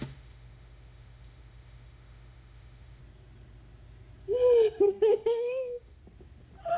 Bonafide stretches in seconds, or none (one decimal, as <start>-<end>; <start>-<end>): 3.0-4.8; 6.0-6.8